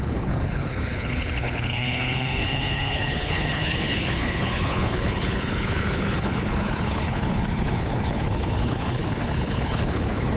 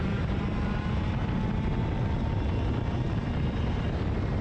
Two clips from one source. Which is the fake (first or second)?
first